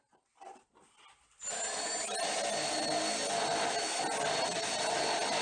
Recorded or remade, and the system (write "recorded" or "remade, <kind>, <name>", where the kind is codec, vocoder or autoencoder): recorded